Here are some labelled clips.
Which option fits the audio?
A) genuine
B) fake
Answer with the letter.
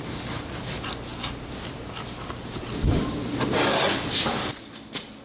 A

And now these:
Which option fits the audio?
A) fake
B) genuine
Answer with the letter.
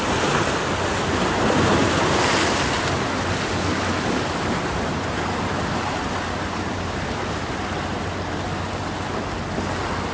B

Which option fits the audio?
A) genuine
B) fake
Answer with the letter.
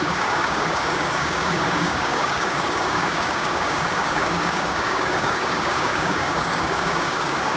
B